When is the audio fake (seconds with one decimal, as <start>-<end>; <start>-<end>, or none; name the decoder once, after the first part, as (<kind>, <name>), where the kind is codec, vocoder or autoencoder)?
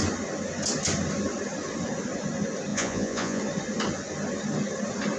2.7-3.4 (vocoder, Vocos)